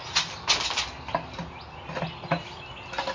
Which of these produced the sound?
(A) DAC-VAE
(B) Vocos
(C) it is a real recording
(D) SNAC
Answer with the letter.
C